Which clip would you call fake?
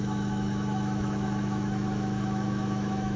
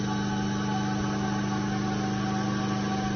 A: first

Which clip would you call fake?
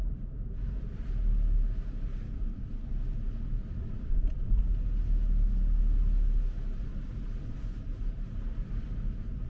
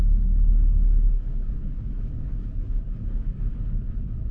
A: second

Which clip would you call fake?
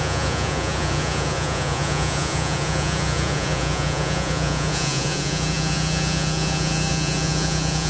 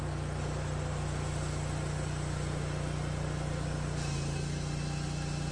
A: first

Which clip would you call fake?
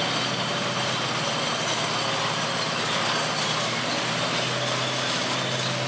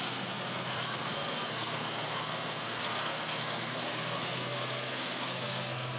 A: second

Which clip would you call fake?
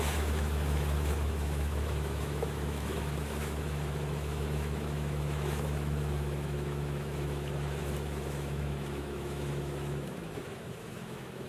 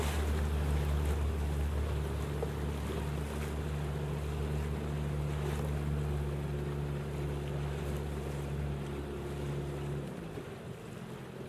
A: first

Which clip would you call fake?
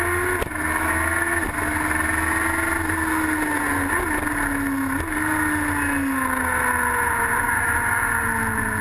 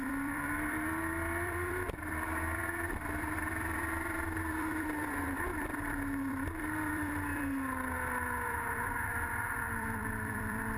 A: second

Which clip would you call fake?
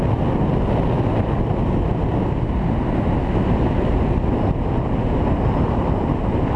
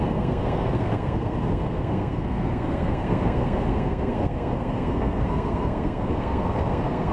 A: second